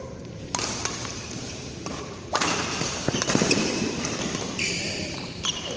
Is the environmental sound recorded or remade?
remade